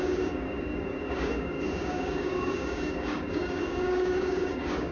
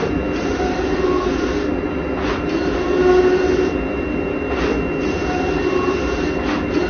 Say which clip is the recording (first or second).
second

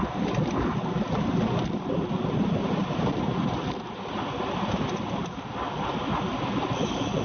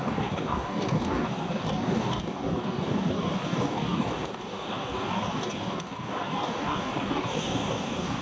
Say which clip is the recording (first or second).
first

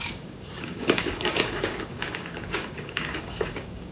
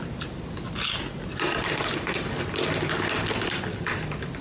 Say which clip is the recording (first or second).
second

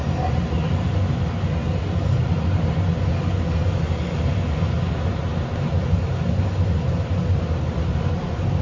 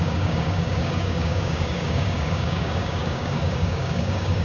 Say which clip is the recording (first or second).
first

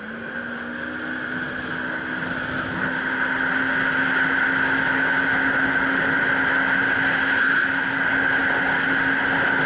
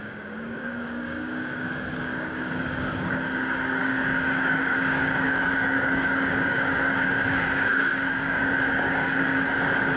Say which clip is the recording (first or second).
first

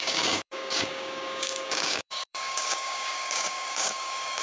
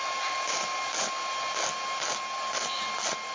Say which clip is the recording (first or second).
second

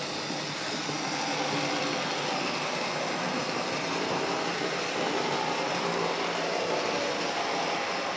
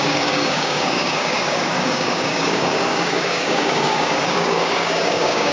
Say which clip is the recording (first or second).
first